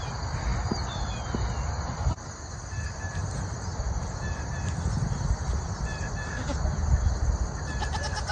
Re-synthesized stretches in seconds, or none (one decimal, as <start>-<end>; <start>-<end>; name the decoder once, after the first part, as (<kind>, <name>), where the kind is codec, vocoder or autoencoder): none